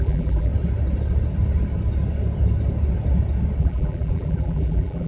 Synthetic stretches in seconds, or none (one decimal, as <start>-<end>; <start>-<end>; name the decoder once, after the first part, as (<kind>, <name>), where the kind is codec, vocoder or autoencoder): 0.0-0.5 (vocoder, BigVGAN v2); 3.6-5.1